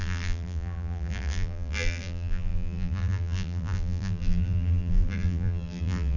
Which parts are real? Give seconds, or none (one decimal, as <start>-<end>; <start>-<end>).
none